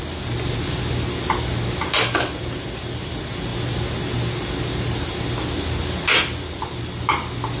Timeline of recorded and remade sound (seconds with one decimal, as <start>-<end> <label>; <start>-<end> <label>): 0.0-7.6 recorded